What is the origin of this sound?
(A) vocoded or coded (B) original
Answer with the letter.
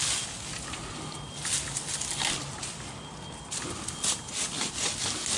B